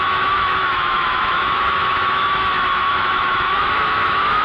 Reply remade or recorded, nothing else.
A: remade